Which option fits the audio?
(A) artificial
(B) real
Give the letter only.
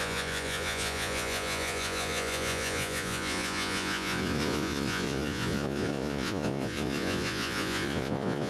A